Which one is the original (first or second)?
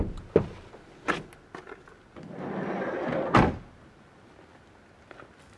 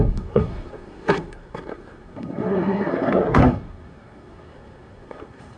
first